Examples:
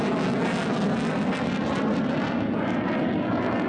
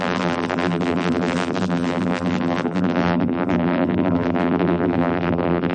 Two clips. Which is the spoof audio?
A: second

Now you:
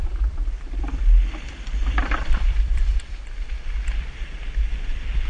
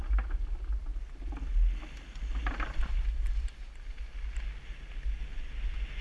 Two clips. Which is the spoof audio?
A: first